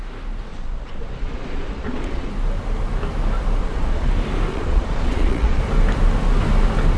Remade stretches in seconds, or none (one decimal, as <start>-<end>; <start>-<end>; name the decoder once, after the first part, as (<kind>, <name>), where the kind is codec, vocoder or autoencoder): 0.5-2.3 (vocoder, Vocos); 3.6-4.1; 4.5-5.6